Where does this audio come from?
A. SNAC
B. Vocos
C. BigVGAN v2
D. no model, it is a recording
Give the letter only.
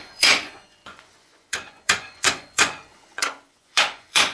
B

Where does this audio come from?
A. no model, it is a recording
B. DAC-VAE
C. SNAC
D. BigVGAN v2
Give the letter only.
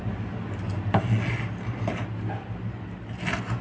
A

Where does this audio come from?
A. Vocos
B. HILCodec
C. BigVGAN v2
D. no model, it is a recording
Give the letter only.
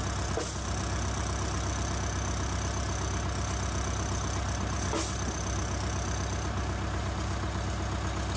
D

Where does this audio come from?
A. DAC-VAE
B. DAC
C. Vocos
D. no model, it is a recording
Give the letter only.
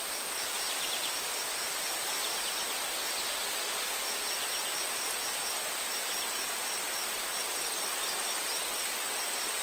D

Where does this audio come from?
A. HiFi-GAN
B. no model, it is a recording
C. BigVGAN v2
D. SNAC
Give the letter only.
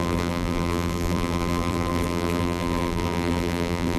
C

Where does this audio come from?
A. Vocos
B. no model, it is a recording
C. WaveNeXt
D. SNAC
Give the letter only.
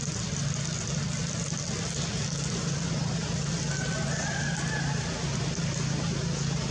B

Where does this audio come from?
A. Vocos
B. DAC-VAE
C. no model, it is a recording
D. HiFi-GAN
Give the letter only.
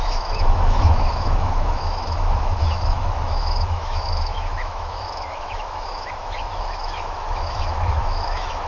B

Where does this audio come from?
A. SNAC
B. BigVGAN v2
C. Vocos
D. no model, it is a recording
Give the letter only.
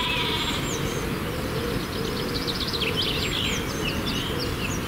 D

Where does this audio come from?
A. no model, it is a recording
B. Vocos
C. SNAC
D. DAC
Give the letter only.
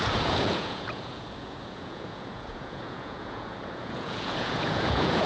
B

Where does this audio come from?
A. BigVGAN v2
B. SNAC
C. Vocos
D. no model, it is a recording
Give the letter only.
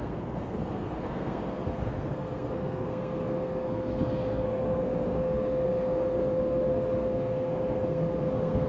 B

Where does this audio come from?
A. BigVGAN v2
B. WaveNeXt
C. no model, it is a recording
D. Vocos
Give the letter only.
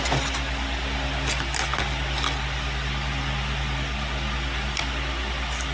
C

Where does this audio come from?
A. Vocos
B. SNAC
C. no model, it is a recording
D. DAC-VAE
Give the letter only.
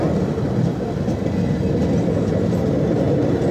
C